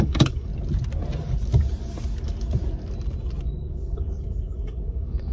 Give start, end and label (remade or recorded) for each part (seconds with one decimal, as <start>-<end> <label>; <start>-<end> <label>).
0.0-0.5 remade; 0.5-3.7 recorded; 3.7-5.3 remade